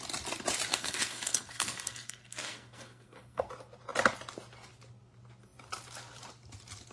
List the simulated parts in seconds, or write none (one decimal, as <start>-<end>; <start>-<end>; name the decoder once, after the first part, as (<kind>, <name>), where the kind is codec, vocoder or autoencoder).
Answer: 0.7-3.5 (codec, SNAC)